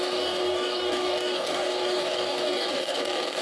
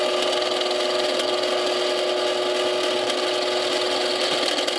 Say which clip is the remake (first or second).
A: first